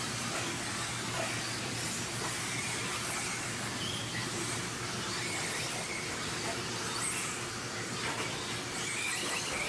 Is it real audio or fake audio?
real